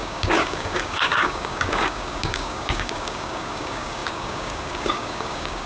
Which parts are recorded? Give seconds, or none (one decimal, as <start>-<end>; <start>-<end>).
none